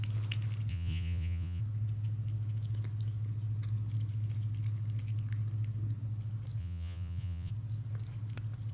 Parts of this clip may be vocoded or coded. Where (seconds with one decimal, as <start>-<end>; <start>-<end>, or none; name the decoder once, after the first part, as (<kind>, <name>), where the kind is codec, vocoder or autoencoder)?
0.7-1.6 (vocoder, Vocos); 6.6-7.5